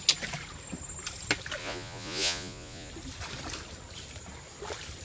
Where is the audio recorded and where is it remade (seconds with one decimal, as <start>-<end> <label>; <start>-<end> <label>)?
0.0-1.6 recorded; 1.6-2.9 remade; 2.9-5.0 recorded